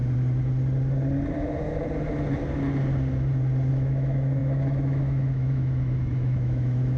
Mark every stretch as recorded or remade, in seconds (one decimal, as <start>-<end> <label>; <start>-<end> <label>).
0.0-3.7 recorded; 3.7-7.0 remade